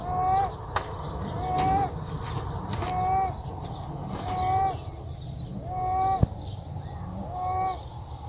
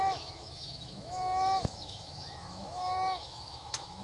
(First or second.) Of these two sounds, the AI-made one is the second